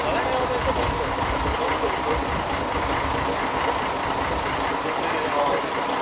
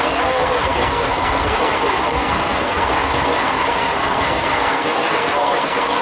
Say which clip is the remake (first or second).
second